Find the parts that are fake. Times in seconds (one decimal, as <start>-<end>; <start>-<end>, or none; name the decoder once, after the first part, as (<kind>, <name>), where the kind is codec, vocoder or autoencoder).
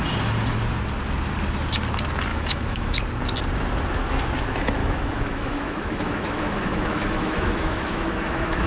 2.3-3.0 (autoencoder, DAC-VAE); 4.8-8.7